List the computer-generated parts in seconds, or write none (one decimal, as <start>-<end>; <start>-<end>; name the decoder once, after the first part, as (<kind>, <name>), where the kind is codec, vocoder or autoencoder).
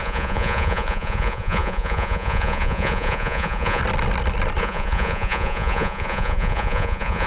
0.0-3.8 (vocoder, Vocos); 4.6-7.3